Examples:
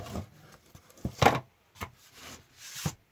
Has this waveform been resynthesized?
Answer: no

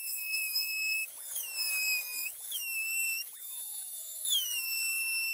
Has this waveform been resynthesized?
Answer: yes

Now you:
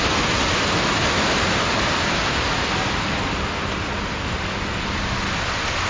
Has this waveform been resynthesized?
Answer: no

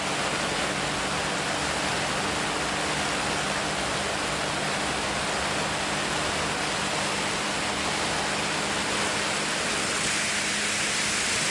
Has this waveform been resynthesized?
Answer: no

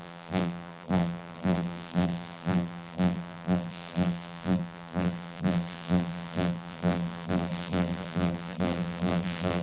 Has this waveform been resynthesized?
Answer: yes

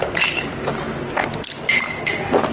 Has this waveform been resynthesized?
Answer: no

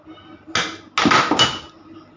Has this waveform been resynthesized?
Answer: no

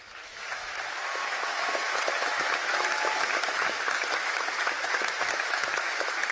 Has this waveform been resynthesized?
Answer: yes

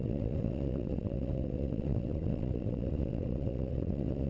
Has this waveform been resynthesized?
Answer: yes